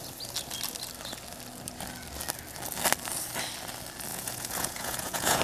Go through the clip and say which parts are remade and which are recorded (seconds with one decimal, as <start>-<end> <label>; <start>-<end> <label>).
0.0-4.1 recorded; 4.1-5.4 remade